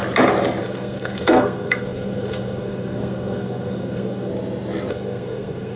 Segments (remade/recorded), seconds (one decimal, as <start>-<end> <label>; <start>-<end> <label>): 0.0-0.6 recorded; 0.6-4.3 remade; 4.3-4.9 recorded; 4.9-5.8 remade

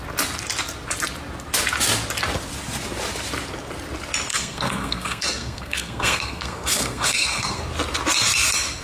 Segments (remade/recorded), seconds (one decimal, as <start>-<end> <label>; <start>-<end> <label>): 0.0-4.3 recorded; 4.3-7.6 remade; 7.6-8.8 recorded